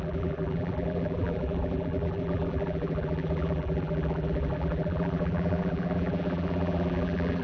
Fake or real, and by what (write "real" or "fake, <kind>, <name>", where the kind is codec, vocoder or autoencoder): fake, vocoder, BigVGAN v2